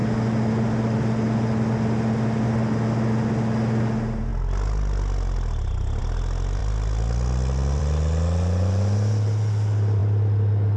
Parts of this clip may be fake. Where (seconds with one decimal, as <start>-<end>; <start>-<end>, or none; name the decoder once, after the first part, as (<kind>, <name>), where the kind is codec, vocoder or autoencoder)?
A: none